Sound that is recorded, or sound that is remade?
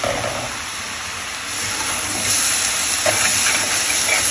recorded